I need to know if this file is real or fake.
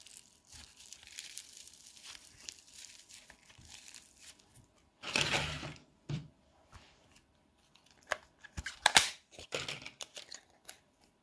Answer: fake